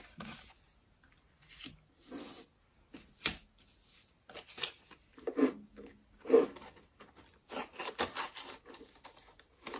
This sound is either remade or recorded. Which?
recorded